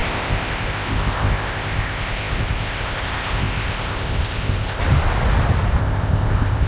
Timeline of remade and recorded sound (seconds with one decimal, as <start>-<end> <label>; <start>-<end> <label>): 0.0-4.8 remade; 4.8-5.8 recorded; 5.8-6.7 remade